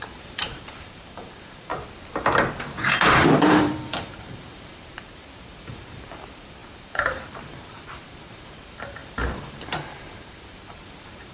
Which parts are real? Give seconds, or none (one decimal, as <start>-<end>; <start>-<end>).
1.7-3.4